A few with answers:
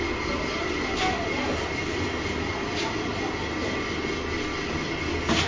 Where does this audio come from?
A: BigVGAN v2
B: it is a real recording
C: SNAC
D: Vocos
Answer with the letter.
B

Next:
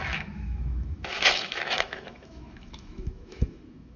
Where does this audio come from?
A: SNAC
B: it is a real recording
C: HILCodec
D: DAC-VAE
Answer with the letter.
D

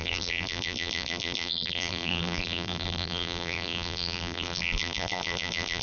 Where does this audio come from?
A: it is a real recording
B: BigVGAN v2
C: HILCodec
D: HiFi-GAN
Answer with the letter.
B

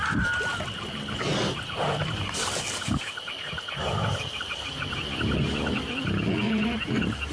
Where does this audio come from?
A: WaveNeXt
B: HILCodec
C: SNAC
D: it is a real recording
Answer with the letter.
D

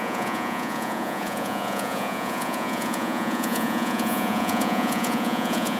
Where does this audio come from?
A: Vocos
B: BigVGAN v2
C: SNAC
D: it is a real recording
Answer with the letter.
A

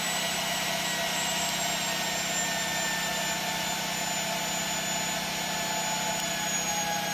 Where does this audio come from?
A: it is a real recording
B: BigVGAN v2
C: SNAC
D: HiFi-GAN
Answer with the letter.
A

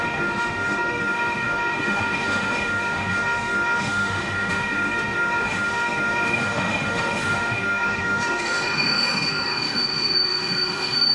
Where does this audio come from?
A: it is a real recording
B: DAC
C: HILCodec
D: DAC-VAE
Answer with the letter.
D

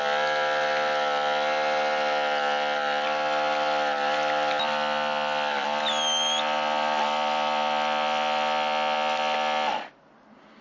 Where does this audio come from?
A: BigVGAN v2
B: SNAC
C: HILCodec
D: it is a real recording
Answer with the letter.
D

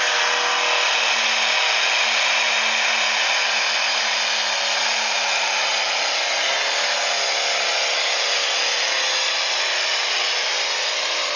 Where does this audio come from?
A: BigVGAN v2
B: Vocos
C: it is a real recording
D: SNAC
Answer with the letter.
C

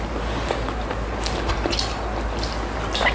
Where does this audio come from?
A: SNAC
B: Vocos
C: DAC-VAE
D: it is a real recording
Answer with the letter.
D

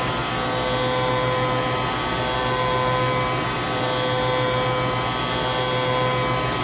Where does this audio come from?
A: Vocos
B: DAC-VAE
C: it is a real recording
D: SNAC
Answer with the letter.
C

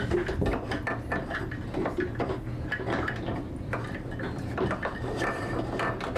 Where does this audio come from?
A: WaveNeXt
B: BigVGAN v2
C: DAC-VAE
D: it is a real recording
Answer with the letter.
D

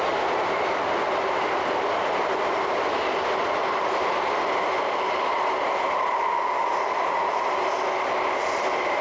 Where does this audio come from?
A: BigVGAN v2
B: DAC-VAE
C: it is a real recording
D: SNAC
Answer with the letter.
C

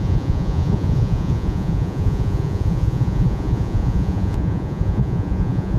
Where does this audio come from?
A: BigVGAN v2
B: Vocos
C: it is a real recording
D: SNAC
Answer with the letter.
B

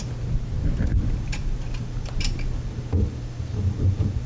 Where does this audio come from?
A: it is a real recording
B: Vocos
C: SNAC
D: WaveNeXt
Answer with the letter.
A